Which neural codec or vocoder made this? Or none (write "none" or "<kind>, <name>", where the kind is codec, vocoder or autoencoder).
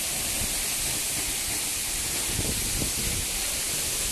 none